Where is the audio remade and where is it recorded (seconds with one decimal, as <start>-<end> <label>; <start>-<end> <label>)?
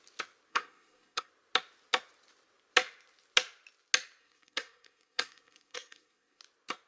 0.0-0.5 recorded; 0.5-1.3 remade; 1.3-4.2 recorded; 4.2-6.4 remade; 6.4-6.9 recorded